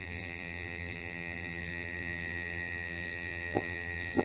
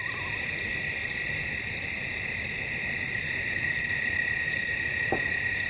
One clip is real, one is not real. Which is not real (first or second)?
first